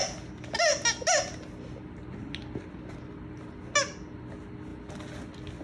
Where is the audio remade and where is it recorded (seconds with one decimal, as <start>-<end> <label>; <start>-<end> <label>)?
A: 0.0-5.6 recorded